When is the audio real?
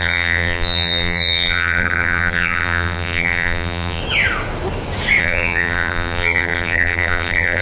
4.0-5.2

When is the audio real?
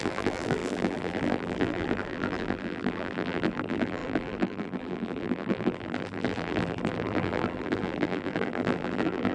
none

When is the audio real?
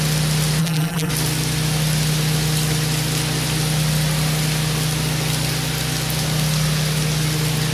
0.0-0.6; 1.1-7.7